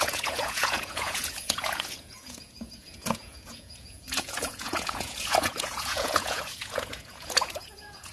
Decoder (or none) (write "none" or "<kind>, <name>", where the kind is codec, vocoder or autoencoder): vocoder, Vocos